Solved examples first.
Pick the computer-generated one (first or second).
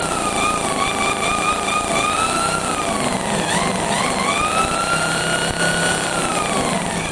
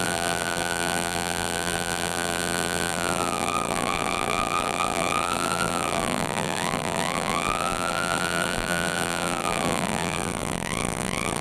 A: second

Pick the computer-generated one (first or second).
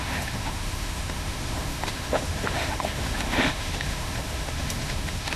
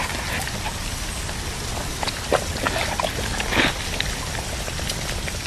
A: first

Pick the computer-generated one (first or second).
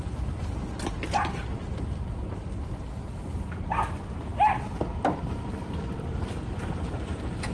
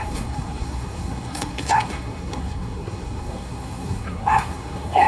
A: second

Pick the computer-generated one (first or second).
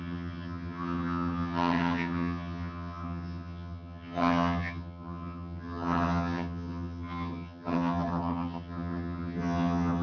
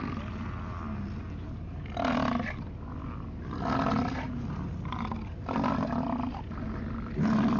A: first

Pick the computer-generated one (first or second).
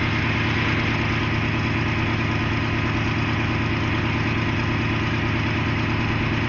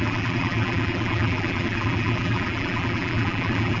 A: second